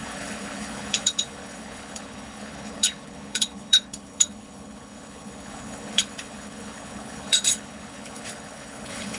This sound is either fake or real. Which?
fake